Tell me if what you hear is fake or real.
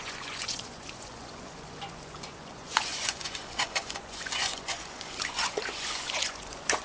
fake